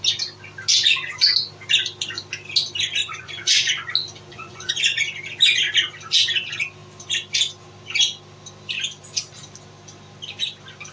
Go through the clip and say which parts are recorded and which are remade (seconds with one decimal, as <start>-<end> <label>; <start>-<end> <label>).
0.0-3.0 recorded; 3.0-3.9 remade; 3.9-4.3 recorded; 4.3-5.0 remade; 5.0-10.9 recorded